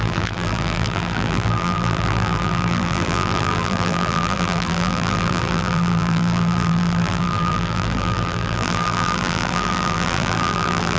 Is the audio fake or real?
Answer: fake